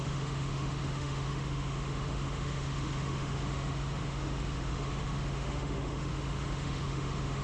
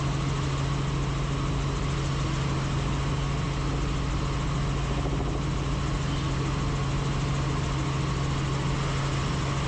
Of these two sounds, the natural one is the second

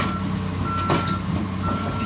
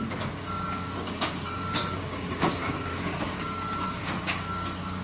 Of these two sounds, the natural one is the first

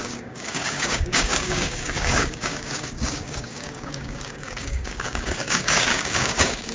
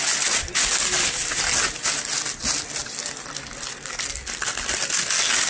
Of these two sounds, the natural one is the second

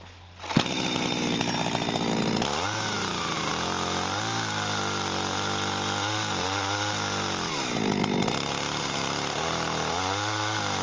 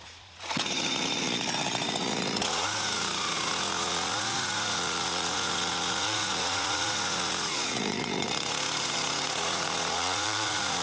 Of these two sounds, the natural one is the first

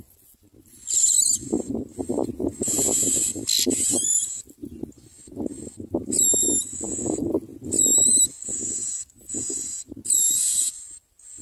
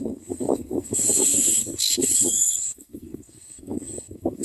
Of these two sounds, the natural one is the first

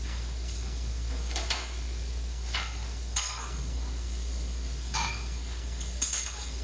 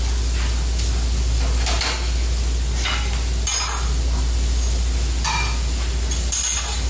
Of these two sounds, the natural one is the second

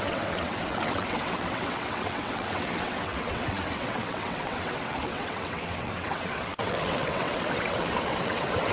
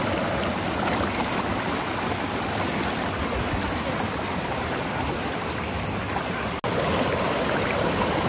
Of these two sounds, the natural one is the second